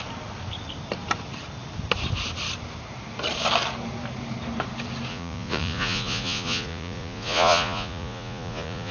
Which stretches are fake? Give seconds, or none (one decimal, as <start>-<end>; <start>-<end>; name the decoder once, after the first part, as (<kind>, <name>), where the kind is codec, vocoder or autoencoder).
5.1-8.9 (vocoder, Vocos)